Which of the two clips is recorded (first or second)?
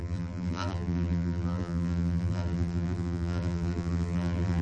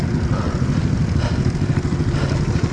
second